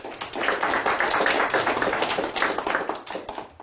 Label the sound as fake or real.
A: real